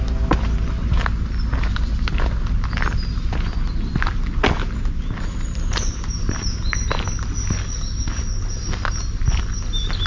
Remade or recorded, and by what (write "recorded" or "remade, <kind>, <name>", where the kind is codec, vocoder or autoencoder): recorded